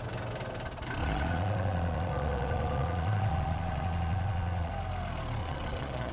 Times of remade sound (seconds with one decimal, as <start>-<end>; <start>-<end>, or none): 1.0-4.7; 5.4-6.1